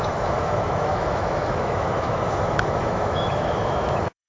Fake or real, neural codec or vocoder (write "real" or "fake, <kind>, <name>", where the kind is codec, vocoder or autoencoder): fake, autoencoder, DAC-VAE